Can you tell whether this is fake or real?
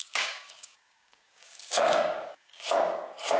fake